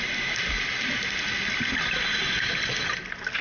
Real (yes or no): yes